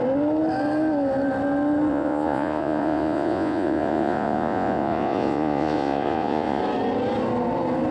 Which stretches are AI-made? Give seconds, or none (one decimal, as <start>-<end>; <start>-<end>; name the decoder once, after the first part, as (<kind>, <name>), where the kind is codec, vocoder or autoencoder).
1.9-6.6 (vocoder, Vocos)